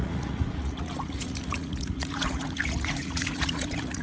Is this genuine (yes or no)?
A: no